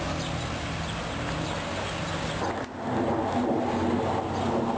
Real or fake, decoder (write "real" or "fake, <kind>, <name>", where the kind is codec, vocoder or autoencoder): real